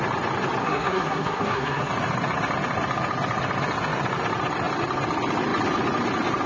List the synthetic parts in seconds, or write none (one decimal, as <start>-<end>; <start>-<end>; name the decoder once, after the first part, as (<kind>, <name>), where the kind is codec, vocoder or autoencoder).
0.6-1.9 (codec, SNAC)